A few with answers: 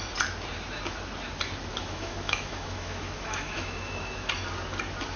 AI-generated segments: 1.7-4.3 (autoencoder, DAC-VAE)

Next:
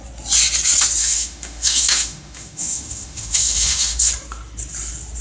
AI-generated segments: 1.0-4.1 (autoencoder, DAC-VAE)

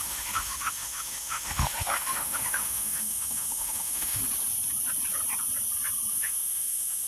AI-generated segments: 0.0-4.2 (autoencoder, DAC-VAE); 6.1-7.1

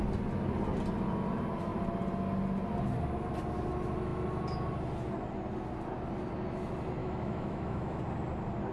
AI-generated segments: 7.0-8.0 (autoencoder, DAC-VAE)

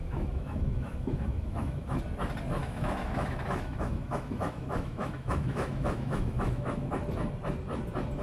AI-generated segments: 0.0-2.0 (autoencoder, DAC-VAE); 2.6-6.9

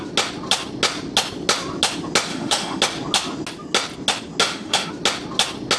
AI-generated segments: 2.3-2.8 (autoencoder, DAC-VAE); 4.4-4.9

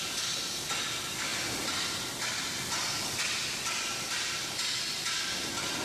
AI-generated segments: none

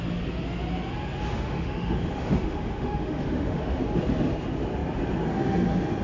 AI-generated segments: 1.3-3.8 (autoencoder, DAC-VAE)